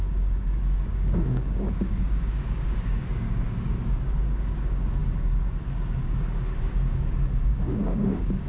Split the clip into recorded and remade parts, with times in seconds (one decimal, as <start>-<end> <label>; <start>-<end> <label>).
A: 0.0-8.5 remade